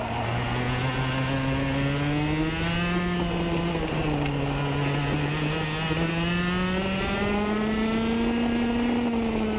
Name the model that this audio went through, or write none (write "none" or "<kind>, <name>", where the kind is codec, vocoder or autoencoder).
none